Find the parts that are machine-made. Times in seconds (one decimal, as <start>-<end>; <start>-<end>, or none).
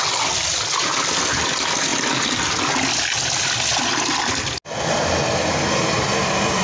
none